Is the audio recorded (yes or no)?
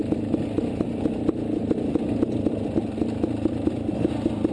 yes